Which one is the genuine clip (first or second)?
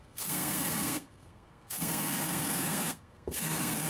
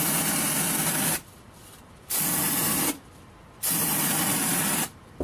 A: second